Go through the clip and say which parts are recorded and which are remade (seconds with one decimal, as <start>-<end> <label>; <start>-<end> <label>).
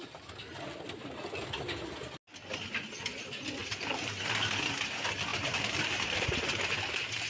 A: 0.0-3.6 recorded; 3.6-4.5 remade; 4.5-5.3 recorded; 5.3-6.7 remade; 6.7-7.3 recorded